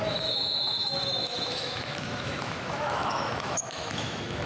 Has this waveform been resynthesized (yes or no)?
yes